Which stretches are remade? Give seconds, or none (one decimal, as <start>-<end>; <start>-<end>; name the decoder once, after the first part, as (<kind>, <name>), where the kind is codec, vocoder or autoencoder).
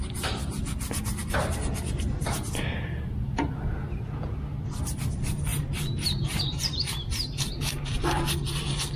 5.5-8.0 (vocoder, BigVGAN v2)